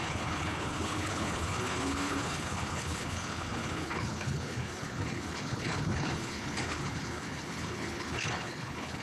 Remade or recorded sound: remade